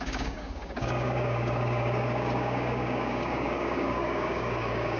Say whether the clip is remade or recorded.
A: remade